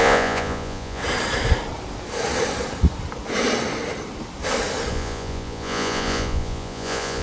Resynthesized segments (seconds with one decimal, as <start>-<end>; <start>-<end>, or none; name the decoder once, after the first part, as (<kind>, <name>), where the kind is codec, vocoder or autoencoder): 0.0-1.0 (vocoder, Vocos); 4.9-7.2